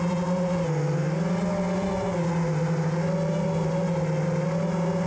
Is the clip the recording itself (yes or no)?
yes